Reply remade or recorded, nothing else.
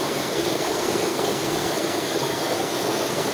remade